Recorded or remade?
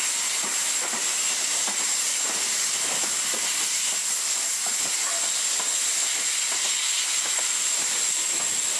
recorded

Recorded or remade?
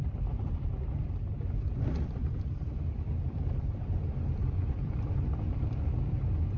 remade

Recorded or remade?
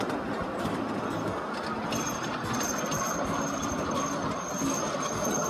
recorded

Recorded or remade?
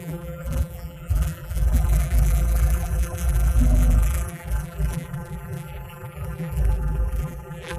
remade